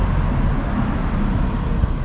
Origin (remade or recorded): recorded